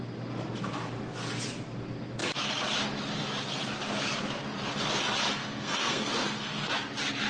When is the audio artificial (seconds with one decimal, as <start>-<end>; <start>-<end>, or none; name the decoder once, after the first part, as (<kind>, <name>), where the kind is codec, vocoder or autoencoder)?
5.4-6.7 (codec, SNAC)